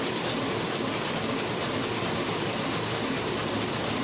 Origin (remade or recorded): recorded